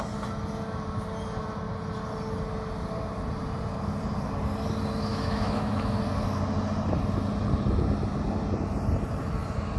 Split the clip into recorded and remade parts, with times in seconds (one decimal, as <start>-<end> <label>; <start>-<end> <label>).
0.0-5.1 recorded; 5.1-6.0 remade; 6.0-9.8 recorded